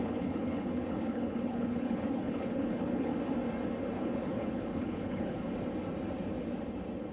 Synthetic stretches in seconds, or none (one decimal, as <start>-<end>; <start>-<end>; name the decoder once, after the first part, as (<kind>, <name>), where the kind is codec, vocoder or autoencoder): 0.0-3.1 (codec, HILCodec); 3.9-5.5